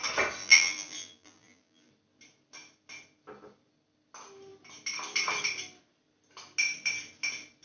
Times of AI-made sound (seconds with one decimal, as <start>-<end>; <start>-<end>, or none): 0.4-1.9